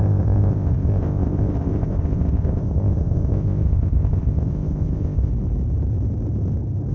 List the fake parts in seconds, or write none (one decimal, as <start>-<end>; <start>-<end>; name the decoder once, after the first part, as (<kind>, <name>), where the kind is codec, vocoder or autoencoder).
0.0-5.3 (codec, ZipCodec)